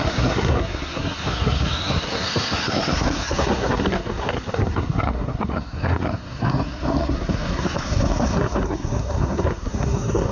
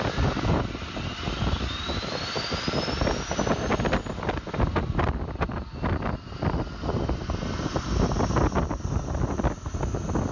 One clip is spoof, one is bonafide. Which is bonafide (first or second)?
second